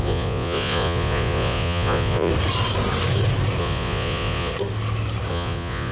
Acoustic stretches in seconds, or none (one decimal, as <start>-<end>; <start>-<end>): 2.3-3.6; 4.5-5.3